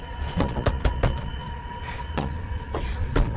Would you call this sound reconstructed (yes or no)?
yes